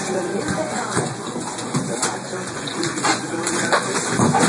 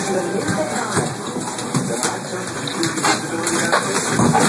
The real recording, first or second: second